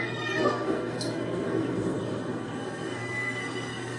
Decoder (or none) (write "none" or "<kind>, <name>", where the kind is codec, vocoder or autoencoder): codec, SNAC